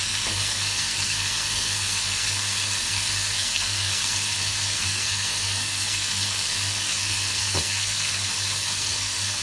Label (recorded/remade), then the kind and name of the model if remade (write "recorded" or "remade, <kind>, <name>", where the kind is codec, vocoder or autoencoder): remade, codec, SNAC